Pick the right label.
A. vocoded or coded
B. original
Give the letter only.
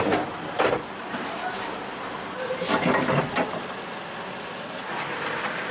B